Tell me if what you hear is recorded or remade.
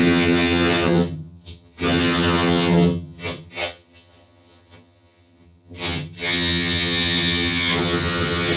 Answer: remade